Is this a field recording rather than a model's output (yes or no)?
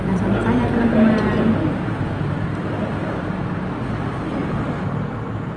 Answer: no